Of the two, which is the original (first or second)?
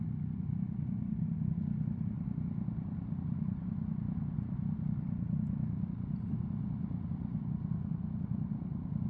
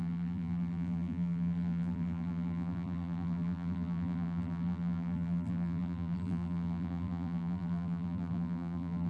first